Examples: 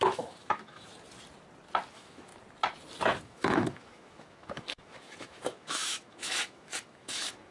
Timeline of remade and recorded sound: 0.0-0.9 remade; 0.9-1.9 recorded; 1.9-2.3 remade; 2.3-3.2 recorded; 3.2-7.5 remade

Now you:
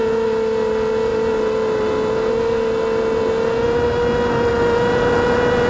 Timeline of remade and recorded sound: 0.0-5.7 recorded